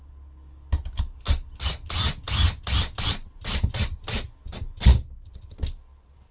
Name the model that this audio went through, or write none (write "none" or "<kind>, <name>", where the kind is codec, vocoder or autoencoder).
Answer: none